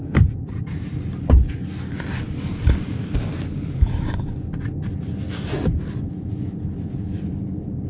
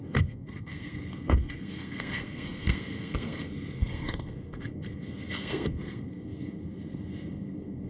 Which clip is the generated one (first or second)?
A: second